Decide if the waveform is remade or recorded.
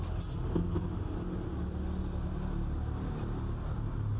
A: recorded